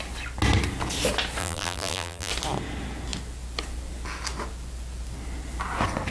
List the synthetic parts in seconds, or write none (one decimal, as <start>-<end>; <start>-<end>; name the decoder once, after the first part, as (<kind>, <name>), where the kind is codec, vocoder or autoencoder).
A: 1.4-2.3 (vocoder, BigVGAN v2)